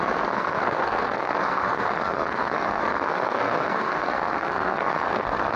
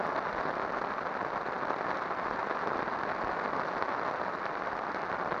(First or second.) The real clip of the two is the second